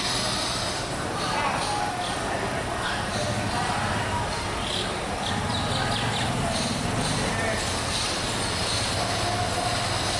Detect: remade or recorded recorded